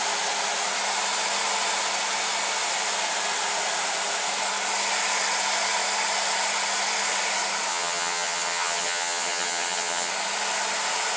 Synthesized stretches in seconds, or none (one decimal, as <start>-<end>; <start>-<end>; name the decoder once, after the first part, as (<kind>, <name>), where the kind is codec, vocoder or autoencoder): 7.7-10.1 (vocoder, HiFi-GAN)